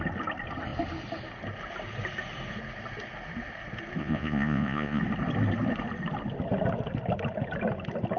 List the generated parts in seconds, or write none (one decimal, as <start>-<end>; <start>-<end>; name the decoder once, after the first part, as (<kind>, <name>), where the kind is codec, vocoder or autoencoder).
4.0-5.0 (vocoder, Vocos)